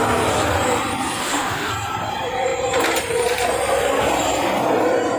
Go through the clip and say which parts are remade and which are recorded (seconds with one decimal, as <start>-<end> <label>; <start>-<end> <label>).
0.0-1.2 recorded; 1.2-1.7 remade; 1.7-5.2 recorded